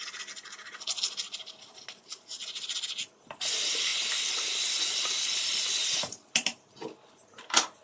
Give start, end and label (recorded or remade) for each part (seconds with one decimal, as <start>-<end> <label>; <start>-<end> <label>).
0.0-3.9 recorded; 3.9-7.8 remade